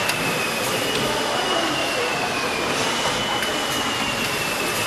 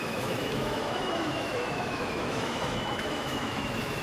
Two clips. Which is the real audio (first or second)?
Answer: first